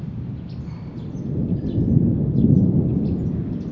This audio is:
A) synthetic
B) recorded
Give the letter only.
B